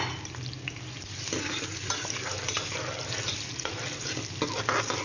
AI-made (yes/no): no